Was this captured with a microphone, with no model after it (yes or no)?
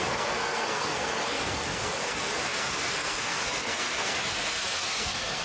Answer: no